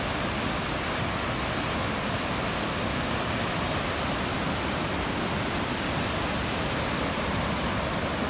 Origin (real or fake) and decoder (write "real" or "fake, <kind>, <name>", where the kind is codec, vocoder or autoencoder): real